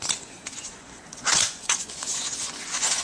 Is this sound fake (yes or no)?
yes